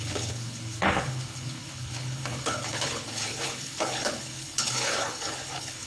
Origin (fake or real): fake